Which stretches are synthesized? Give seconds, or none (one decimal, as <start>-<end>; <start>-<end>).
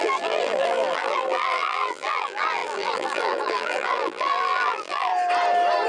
0.0-5.1